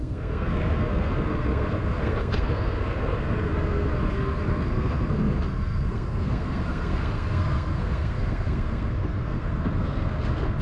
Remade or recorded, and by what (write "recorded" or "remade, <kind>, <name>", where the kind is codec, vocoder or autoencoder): remade, codec, SNAC